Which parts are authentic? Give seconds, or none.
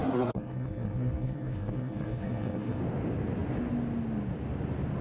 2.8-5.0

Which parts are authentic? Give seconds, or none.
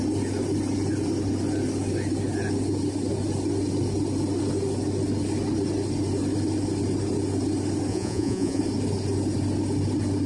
0.0-7.9; 8.6-10.3